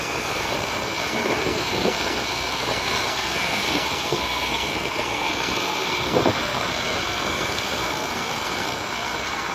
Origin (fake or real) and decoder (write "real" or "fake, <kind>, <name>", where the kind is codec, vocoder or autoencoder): fake, codec, SNAC